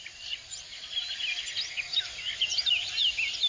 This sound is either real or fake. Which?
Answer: real